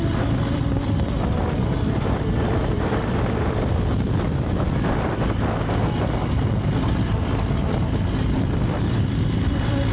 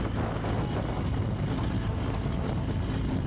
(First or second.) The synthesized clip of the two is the first